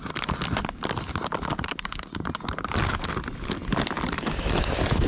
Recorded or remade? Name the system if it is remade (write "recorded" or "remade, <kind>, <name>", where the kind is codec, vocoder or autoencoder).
recorded